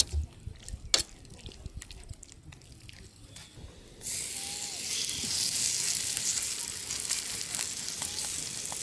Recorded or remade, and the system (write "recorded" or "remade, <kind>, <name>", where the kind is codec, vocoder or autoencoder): recorded